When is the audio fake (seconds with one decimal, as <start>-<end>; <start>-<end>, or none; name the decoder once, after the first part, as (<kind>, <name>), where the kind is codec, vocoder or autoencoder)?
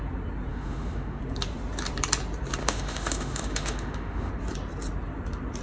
0.5-1.2 (autoencoder, DAC-VAE); 2.6-4.3